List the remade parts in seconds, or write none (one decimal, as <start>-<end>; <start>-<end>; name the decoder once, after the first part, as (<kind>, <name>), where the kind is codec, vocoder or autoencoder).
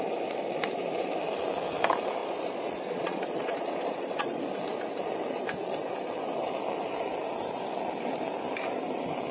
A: 2.2-4.4 (vocoder, Vocos)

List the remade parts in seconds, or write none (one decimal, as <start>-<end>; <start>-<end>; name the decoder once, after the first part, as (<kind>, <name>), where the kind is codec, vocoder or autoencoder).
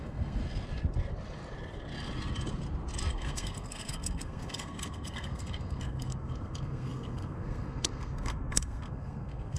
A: 0.0-0.4 (codec, SNAC); 3.1-9.6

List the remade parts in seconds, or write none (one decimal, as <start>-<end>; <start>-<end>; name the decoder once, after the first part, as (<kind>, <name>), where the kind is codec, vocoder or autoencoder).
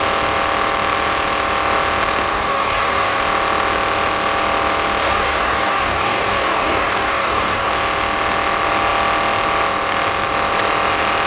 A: 2.3-3.2 (codec, DAC); 5.0-7.7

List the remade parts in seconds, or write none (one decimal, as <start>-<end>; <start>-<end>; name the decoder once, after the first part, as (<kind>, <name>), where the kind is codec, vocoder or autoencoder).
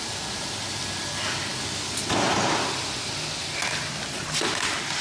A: none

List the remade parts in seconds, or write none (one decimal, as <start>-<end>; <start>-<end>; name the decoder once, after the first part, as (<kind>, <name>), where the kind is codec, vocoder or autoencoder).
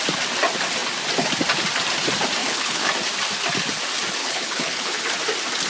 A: 2.4-2.9 (codec, HILCodec); 4.2-5.0